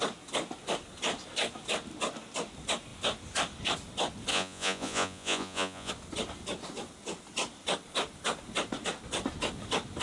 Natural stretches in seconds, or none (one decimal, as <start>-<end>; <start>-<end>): 0.0-4.3; 5.9-10.0